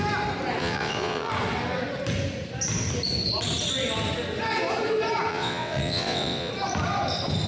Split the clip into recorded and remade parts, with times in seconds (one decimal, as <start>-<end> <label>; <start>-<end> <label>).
0.0-0.6 recorded; 0.6-1.3 remade; 1.3-5.3 recorded; 5.3-6.5 remade; 6.5-7.5 recorded